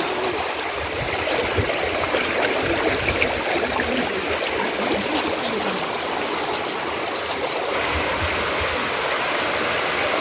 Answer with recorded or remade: recorded